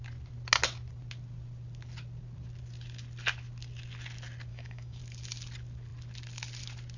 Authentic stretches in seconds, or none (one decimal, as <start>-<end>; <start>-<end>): 0.0-4.5; 5.0-7.0